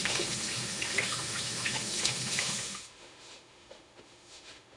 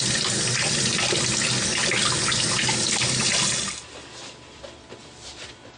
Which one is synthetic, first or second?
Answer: first